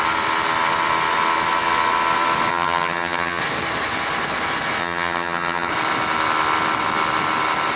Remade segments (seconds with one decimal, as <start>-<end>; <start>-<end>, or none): 2.5-3.4; 4.8-5.7